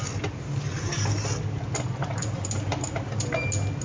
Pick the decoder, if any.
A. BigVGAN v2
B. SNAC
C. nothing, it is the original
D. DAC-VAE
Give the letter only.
C